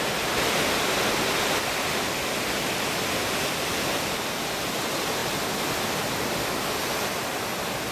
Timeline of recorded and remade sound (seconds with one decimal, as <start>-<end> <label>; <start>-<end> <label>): 0.0-7.9 recorded